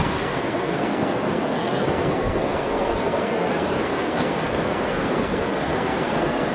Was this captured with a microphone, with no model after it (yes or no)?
no